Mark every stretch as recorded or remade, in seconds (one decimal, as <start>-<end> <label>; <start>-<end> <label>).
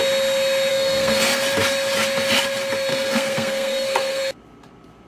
0.0-0.7 recorded; 0.7-1.4 remade; 1.4-2.9 recorded; 2.9-4.2 remade; 4.2-5.1 recorded